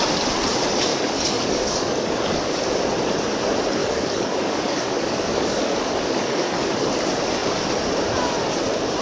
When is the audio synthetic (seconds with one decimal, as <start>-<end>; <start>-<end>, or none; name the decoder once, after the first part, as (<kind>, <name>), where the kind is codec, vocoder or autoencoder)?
0.9-2.4 (codec, DAC); 3.8-6.9